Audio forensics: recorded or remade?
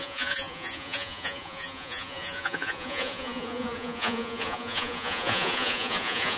remade